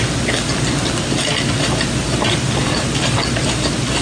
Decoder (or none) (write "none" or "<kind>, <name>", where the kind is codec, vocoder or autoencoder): none